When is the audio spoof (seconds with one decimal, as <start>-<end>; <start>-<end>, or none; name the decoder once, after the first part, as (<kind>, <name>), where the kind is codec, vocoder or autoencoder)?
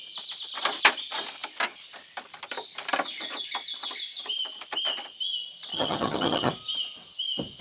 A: 5.7-6.5 (vocoder, HiFi-GAN)